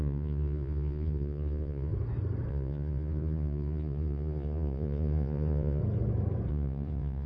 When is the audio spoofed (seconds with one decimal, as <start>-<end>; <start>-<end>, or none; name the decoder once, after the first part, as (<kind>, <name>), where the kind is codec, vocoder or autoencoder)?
0.0-1.9 (vocoder, Vocos); 2.5-5.8; 6.5-7.3